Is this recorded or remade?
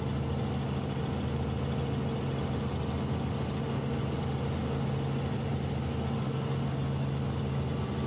recorded